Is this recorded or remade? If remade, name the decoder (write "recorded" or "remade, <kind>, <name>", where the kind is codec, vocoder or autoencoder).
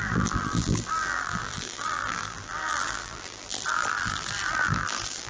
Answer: remade, vocoder, BigVGAN v2